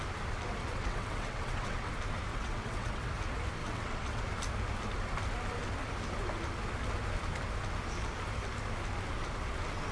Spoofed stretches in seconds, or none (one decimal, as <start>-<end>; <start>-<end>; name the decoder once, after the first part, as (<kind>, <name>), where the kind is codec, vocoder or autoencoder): 0.6-1.9 (vocoder, WaveNeXt); 2.3-3.1; 3.6-4.2